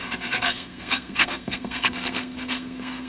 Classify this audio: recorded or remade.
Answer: remade